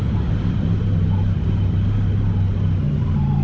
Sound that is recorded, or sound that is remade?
recorded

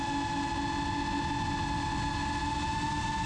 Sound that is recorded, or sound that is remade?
recorded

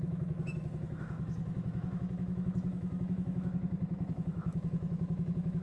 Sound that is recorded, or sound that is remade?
remade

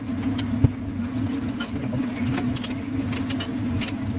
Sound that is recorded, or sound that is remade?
recorded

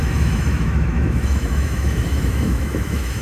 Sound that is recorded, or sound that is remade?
remade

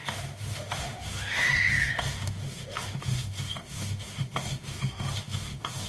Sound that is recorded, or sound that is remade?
remade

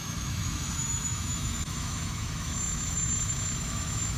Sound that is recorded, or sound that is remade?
remade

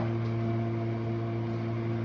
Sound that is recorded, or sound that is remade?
recorded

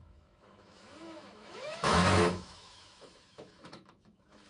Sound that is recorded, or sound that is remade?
remade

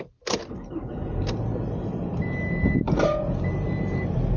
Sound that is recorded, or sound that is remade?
recorded